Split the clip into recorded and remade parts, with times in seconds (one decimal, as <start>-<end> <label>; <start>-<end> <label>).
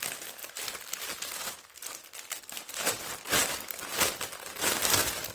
0.0-5.3 recorded